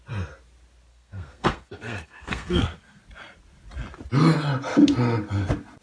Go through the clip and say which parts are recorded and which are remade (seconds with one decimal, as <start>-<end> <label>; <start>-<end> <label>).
0.0-0.9 recorded; 0.9-3.0 remade; 3.0-5.8 recorded